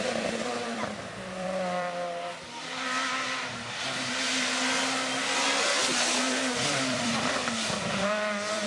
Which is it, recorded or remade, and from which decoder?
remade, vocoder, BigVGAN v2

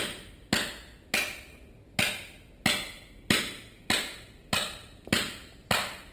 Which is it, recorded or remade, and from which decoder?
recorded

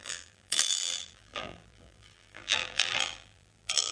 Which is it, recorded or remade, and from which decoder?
remade, vocoder, BigVGAN v2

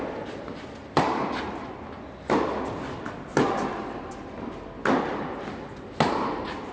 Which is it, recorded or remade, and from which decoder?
recorded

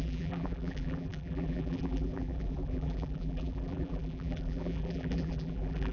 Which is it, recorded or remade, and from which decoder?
remade, vocoder, BigVGAN v2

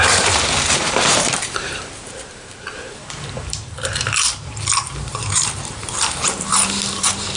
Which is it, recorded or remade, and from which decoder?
remade, vocoder, BigVGAN v2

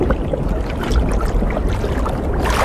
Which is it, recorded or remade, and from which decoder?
recorded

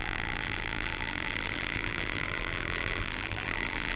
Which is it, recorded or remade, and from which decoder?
remade, vocoder, BigVGAN v2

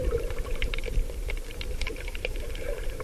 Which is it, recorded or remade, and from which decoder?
remade, vocoder, BigVGAN v2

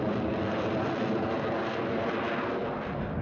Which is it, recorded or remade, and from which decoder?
remade, vocoder, BigVGAN v2